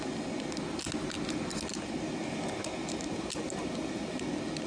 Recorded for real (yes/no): yes